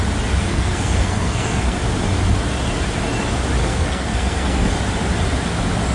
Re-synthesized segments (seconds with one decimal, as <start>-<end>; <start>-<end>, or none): 0.4-1.8; 3.6-4.7